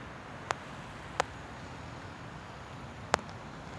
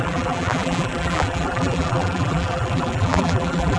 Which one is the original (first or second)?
first